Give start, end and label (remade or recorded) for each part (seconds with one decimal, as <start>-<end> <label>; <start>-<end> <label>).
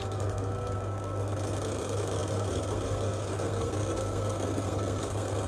0.0-5.5 remade